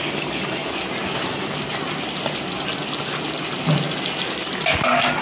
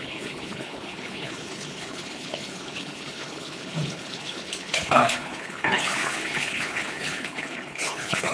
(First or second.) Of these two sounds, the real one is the first